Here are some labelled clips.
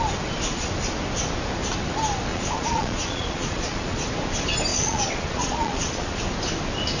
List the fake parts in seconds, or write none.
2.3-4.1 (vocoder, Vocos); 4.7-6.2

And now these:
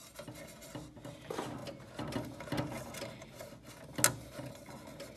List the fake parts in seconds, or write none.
none

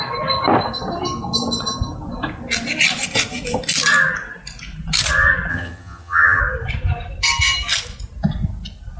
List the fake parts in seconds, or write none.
5.5-6.4 (vocoder, HiFi-GAN)

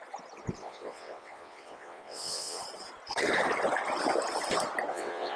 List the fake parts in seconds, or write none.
0.6-2.6 (vocoder, WaveNeXt); 4.9-5.4

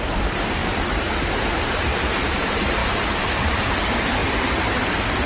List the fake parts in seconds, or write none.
0.0-0.6 (vocoder, BigVGAN v2); 1.5-5.3

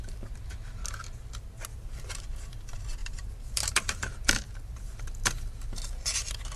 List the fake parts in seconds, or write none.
1.7-2.3 (vocoder, BigVGAN v2); 3.0-5.0

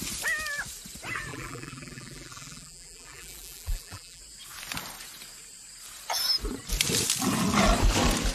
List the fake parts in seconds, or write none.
1.3-4.2 (vocoder, BigVGAN v2)